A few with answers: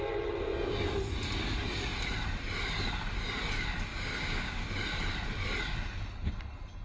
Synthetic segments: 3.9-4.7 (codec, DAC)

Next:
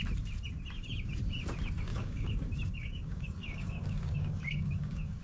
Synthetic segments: 1.9-5.2 (codec, DAC)